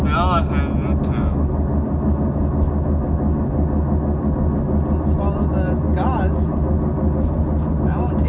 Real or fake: real